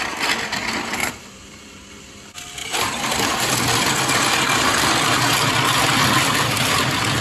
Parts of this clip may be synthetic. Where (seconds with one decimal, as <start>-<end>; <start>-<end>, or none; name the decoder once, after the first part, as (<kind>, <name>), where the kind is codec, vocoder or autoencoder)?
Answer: 1.0-1.9 (vocoder, BigVGAN v2); 2.6-3.5